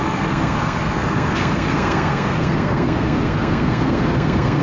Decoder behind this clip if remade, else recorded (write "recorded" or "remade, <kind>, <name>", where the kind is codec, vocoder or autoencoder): remade, codec, SNAC